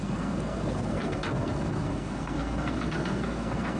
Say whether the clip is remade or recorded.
remade